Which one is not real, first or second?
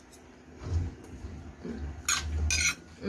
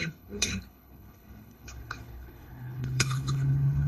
second